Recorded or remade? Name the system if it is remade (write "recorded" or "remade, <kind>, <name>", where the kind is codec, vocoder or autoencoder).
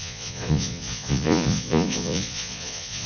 remade, vocoder, Vocos